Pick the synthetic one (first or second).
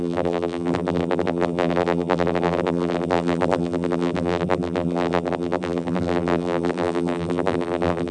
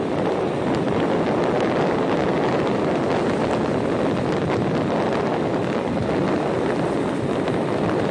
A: first